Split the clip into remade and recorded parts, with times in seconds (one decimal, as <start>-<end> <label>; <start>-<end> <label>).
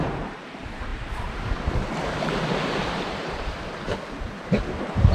0.0-5.1 remade